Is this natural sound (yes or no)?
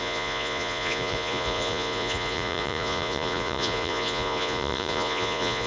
no